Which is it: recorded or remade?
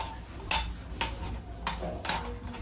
recorded